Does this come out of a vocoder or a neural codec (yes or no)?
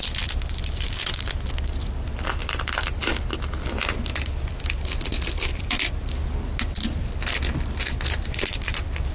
no